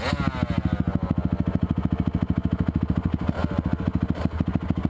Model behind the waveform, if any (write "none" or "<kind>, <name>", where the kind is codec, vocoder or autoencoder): none